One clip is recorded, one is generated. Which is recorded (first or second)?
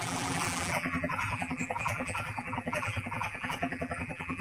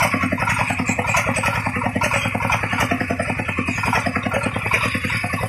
second